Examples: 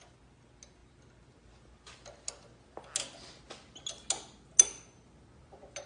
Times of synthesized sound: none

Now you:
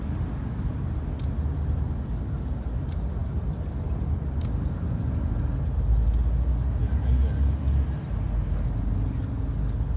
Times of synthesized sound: none

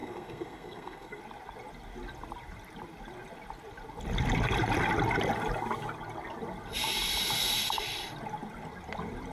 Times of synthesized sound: 0.0-1.2 (codec, SNAC)

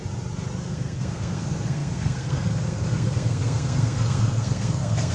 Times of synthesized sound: 0.6-5.1 (codec, SNAC)

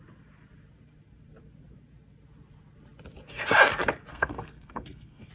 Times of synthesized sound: 4.1-5.3 (codec, SNAC)

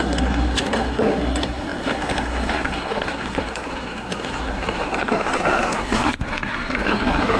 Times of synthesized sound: 0.0-7.4 (codec, SNAC)